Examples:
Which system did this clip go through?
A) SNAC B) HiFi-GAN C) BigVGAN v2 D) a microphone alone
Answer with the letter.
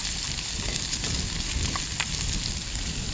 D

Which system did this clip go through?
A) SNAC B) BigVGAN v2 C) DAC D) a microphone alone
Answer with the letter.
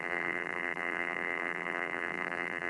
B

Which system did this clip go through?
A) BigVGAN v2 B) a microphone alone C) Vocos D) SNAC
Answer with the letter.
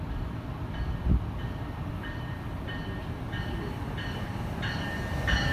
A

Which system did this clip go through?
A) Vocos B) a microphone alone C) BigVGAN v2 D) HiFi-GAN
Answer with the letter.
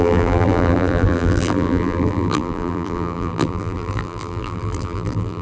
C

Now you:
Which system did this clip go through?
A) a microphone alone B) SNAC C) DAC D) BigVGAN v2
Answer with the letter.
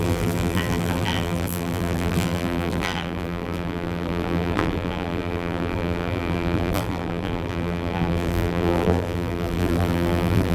D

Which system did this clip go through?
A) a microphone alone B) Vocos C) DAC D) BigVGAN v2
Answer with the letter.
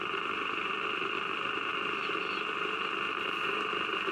A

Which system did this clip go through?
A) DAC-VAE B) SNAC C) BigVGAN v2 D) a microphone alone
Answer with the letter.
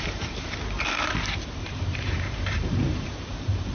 C